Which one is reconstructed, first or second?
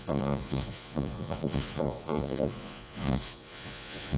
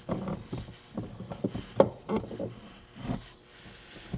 first